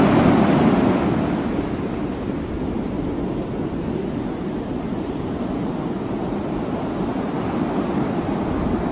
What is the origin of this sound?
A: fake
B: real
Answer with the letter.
B